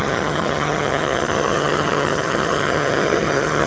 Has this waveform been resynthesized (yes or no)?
yes